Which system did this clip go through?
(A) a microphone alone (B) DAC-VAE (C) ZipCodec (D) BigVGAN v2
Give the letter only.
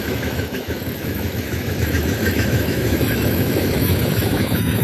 B